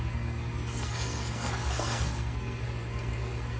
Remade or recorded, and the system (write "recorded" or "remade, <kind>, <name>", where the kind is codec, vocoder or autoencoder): remade, codec, SNAC